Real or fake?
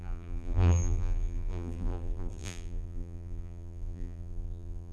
fake